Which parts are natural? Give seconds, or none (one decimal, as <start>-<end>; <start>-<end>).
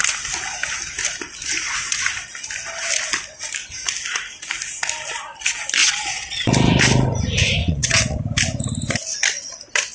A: 0.0-5.8; 6.5-7.6; 8.2-9.9